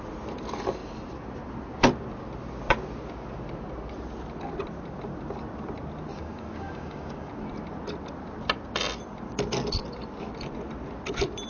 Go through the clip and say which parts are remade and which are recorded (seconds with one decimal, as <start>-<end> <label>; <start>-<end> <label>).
0.0-6.1 recorded; 6.1-7.3 remade; 7.3-11.5 recorded